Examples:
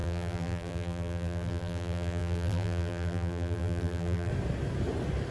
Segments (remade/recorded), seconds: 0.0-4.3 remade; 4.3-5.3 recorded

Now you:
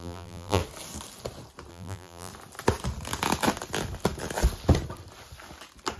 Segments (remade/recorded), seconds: 0.0-0.6 remade; 0.6-1.7 recorded; 1.7-2.3 remade; 2.3-6.0 recorded

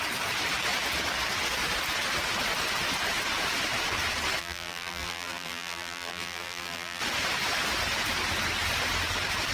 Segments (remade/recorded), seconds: 0.0-4.4 recorded; 4.4-7.0 remade; 7.0-9.5 recorded

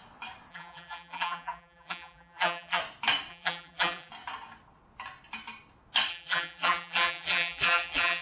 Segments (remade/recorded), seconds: 0.0-0.5 recorded; 0.5-2.8 remade; 2.8-3.3 recorded; 3.3-4.1 remade; 4.1-6.1 recorded; 6.1-8.2 remade

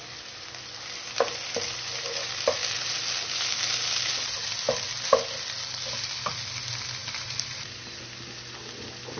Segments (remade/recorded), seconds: 0.0-7.0 recorded; 7.0-8.0 remade; 8.0-9.2 recorded

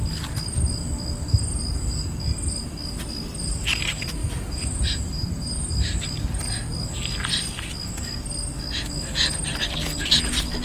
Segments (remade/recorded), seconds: 0.0-4.2 recorded; 4.2-5.7 remade; 5.7-10.6 recorded